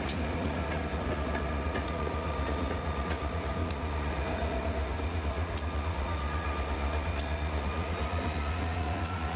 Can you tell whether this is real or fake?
fake